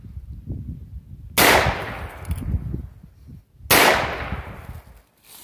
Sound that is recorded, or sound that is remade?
recorded